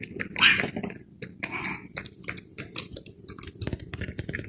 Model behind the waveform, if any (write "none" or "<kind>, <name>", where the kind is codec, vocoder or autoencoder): none